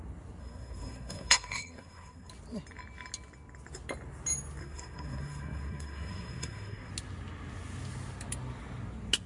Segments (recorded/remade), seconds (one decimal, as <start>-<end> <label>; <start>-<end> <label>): 0.0-0.4 recorded; 0.4-2.3 remade; 2.3-4.6 recorded; 4.6-6.9 remade; 6.9-9.3 recorded